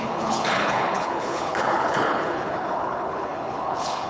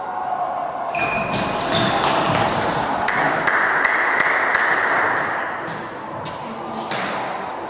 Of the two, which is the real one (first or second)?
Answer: second